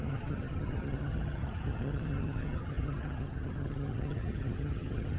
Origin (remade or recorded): remade